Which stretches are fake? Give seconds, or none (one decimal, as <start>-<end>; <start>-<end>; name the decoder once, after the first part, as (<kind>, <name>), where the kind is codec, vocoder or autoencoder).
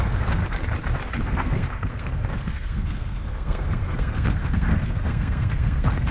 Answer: 0.0-0.4 (codec, SNAC); 1.2-6.1